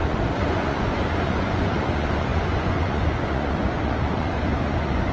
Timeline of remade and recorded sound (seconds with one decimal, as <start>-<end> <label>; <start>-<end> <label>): 0.0-5.1 remade